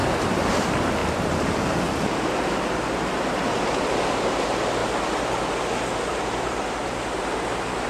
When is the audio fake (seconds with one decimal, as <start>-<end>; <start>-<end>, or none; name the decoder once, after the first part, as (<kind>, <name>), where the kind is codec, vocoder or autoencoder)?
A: none